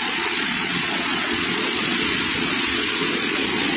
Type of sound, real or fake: fake